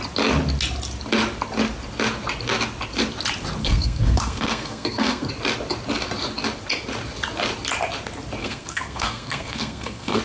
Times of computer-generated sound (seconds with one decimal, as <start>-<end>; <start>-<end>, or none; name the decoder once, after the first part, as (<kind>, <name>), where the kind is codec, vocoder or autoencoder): 3.6-5.3 (codec, SNAC); 8.4-10.2